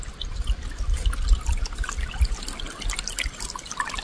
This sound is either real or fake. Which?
real